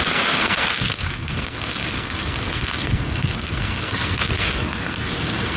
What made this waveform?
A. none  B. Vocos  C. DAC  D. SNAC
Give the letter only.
D